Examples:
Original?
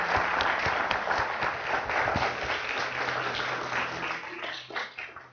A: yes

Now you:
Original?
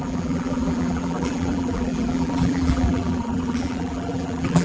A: no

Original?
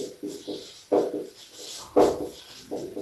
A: yes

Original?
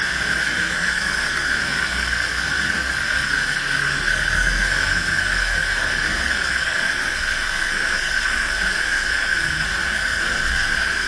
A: no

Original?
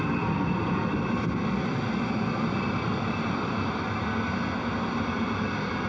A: yes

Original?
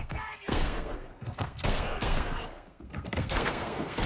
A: no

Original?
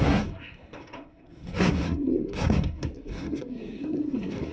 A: no